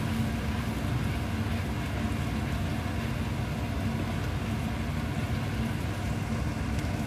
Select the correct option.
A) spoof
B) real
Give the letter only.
B